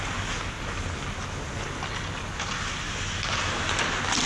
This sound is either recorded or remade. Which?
recorded